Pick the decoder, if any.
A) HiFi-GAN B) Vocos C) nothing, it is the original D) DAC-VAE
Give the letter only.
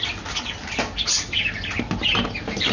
C